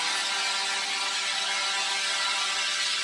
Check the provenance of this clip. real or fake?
real